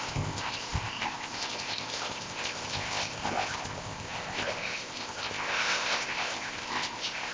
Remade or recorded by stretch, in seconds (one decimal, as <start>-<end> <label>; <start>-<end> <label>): 0.0-7.3 remade